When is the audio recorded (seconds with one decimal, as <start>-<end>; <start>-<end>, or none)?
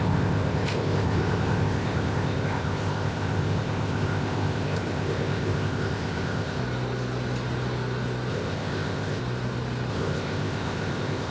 6.6-8.3; 9.2-9.9